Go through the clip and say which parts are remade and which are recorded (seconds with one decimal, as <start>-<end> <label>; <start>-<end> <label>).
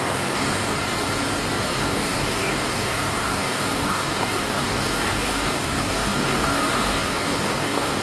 0.0-0.7 remade; 0.7-1.6 recorded; 1.6-8.0 remade